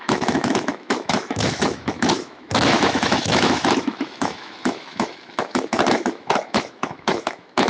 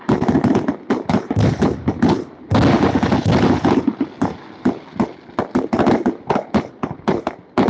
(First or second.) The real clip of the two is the second